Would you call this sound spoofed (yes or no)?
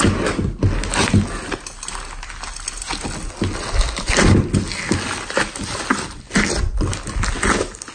no